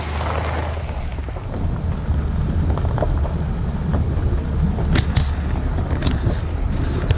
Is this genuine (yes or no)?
yes